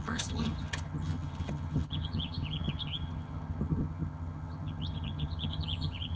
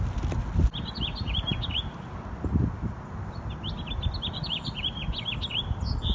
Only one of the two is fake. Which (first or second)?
first